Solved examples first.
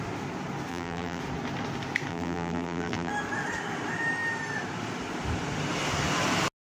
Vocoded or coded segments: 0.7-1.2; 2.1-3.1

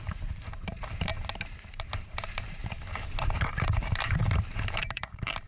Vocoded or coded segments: 0.0-1.1; 1.8-2.6; 3.4-5.5